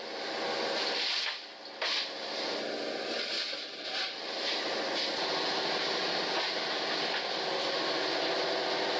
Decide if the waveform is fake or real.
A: real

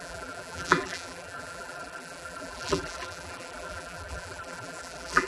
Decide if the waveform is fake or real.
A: fake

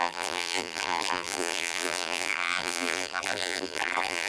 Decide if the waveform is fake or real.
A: fake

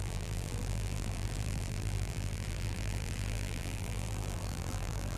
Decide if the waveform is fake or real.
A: fake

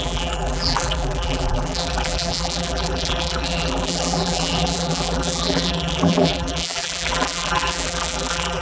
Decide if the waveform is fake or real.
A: fake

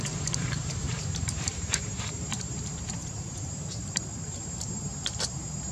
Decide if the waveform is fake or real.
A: fake